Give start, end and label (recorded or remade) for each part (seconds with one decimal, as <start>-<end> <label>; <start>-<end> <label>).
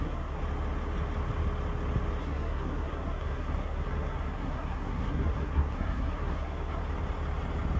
0.0-0.4 remade; 0.4-2.2 recorded; 2.2-6.8 remade; 6.8-7.8 recorded